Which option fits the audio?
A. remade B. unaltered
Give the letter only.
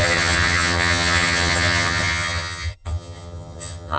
A